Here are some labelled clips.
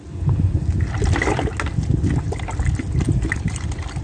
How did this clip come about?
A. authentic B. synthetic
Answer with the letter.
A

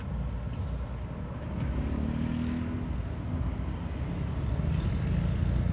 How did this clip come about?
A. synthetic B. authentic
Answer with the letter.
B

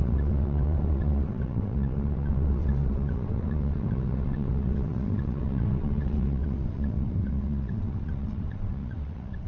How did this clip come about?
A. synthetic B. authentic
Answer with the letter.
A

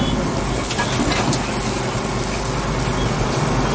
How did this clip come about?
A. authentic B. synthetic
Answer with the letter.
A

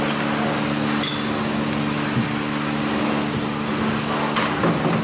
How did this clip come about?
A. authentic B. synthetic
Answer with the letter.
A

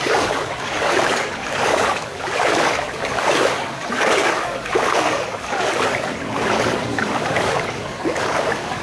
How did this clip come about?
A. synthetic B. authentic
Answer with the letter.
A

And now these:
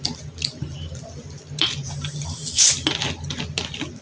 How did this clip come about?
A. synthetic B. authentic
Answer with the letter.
B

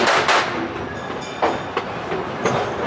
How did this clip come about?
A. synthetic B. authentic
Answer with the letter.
B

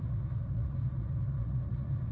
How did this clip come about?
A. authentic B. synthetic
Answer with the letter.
B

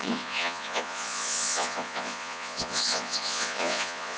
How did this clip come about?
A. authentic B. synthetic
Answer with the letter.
B